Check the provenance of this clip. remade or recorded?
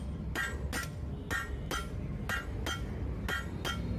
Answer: recorded